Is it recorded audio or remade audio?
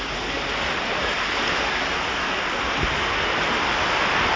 recorded